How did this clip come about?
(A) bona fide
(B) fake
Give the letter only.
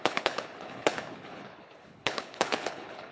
B